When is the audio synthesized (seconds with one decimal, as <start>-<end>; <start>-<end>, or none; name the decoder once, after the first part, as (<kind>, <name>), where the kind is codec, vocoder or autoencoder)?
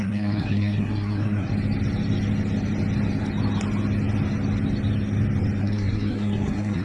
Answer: 0.0-1.5 (codec, SNAC); 5.6-6.8